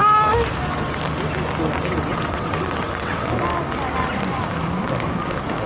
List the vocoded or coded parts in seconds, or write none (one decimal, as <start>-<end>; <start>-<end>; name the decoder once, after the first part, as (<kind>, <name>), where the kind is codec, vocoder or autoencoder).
2.1-3.3 (vocoder, WaveNeXt)